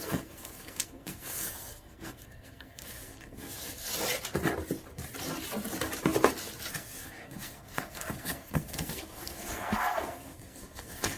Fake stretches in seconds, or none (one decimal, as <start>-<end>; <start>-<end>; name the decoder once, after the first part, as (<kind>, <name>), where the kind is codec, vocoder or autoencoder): 0.0-3.9 (codec, SNAC); 6.7-11.2